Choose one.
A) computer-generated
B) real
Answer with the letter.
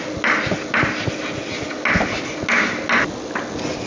B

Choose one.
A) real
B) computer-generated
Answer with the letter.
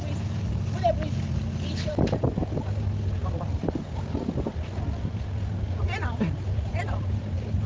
A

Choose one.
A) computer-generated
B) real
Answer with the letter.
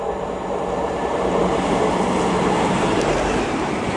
A